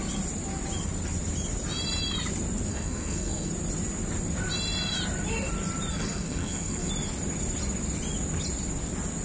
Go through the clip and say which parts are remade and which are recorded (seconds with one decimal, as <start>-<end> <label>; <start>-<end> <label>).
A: 0.0-2.7 recorded; 2.7-3.5 remade; 3.5-5.9 recorded; 5.9-6.9 remade; 6.9-9.2 recorded